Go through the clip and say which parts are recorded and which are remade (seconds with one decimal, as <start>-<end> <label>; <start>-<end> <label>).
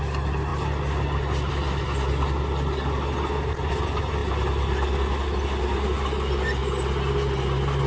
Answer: 0.0-7.9 recorded